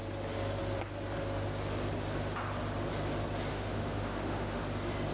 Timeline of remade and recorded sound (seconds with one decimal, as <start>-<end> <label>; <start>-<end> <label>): 0.0-3.5 recorded; 3.5-4.6 remade; 4.6-5.1 recorded